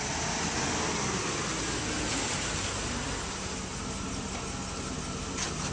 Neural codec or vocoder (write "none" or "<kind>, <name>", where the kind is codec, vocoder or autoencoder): none